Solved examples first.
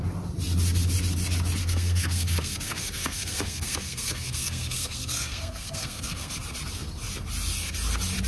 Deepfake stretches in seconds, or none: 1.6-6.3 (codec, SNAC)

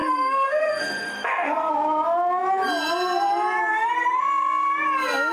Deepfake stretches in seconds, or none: 0.0-1.7 (codec, SNAC); 3.7-4.2

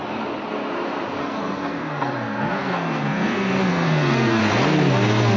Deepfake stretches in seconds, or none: 1.2-4.4 (codec, SNAC)